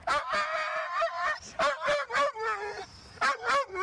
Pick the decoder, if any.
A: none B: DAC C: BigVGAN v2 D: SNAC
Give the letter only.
A